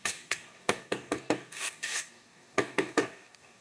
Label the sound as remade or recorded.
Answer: remade